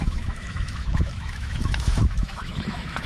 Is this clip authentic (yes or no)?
no